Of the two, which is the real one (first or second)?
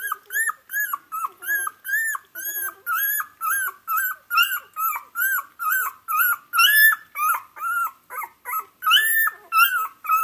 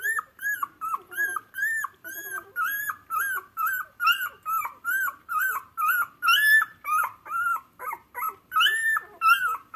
first